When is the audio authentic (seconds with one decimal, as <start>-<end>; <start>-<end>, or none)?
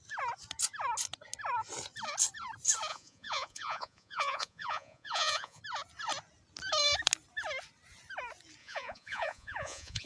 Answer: 0.0-2.9; 5.6-8.6